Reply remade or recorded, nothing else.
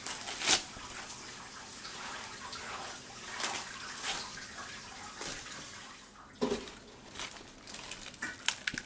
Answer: recorded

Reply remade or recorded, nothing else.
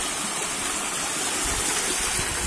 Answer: recorded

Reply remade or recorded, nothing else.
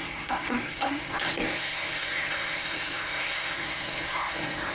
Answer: remade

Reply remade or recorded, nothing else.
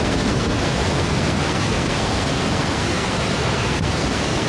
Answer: remade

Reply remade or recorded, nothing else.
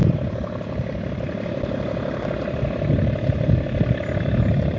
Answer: recorded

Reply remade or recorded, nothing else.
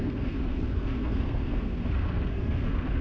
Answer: remade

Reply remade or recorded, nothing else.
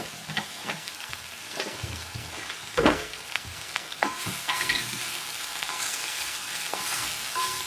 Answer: remade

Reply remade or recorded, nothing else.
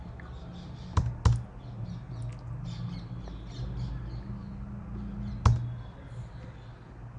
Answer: recorded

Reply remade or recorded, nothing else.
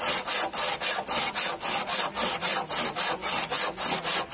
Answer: recorded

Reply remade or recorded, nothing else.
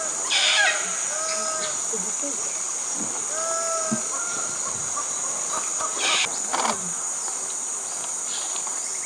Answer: recorded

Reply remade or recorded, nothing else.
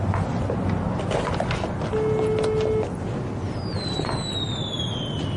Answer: recorded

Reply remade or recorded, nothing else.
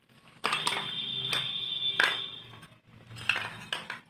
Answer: recorded